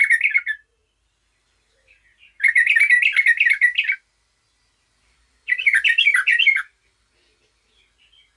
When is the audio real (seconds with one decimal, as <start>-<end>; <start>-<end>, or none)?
0.0-0.8; 4.6-6.3